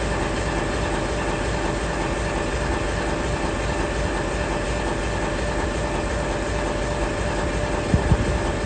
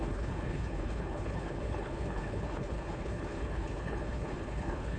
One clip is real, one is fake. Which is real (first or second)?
first